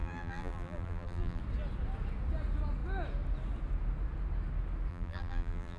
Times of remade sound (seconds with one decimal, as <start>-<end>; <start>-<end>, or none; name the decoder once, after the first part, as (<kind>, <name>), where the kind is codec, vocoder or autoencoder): 0.0-1.4 (vocoder, BigVGAN v2); 4.9-5.8